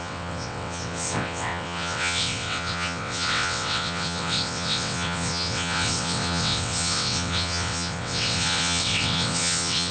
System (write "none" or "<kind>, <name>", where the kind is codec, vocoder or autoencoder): vocoder, WaveNeXt